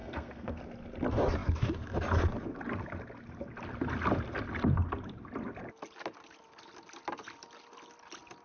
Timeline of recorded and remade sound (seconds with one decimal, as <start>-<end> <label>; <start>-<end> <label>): 0.0-0.6 remade; 0.6-8.4 recorded